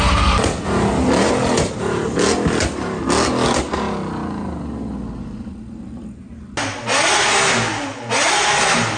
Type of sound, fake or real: real